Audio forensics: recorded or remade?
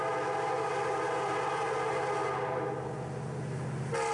recorded